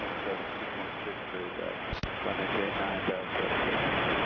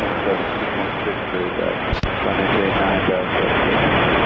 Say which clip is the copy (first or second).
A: first